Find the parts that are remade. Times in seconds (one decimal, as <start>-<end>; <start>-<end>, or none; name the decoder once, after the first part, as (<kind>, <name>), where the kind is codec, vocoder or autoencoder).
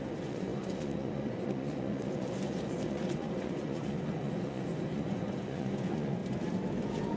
0.0-6.2 (vocoder, Vocos); 6.8-7.2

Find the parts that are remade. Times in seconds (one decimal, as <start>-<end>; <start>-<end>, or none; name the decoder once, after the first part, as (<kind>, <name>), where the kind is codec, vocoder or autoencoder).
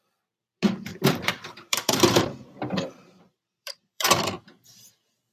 0.9-4.1 (vocoder, BigVGAN v2)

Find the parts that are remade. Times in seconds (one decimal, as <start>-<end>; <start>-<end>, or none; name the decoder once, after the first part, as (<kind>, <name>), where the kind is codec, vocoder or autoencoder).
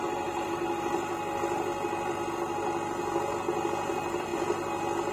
none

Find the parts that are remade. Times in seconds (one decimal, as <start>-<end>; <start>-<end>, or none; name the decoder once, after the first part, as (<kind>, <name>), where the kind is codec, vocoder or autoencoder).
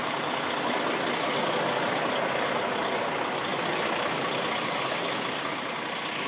none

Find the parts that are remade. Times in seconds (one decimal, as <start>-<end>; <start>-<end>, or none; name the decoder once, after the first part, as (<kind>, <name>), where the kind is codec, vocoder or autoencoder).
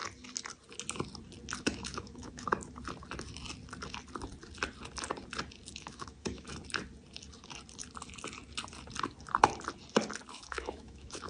1.6-2.5 (autoencoder, DAC-VAE); 5.7-6.6; 10.3-11.3